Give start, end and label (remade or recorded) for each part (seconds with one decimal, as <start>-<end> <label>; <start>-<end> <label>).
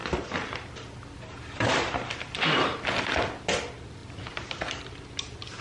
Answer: 0.0-3.4 remade; 3.4-5.6 recorded